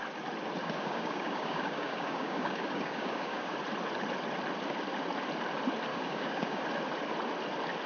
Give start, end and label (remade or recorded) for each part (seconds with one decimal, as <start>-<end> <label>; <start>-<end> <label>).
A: 0.0-0.6 recorded; 0.6-3.5 remade; 3.5-5.9 recorded; 5.9-6.6 remade; 6.6-7.9 recorded